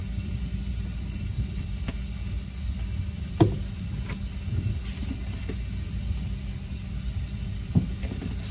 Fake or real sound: real